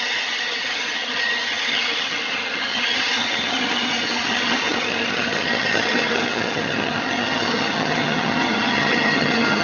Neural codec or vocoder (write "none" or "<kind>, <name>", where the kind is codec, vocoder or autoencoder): vocoder, HiFi-GAN